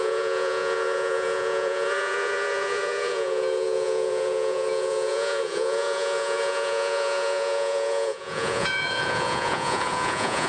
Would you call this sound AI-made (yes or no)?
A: yes